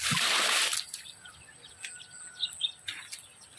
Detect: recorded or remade recorded